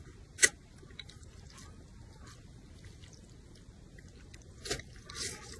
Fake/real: real